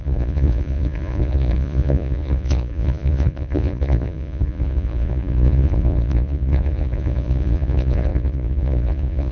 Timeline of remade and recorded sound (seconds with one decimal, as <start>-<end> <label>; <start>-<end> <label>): 0.0-9.3 remade